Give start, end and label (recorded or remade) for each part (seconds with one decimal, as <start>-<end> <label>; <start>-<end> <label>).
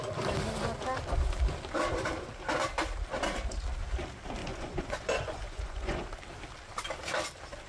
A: 0.0-4.4 recorded; 4.4-6.1 remade; 6.1-7.7 recorded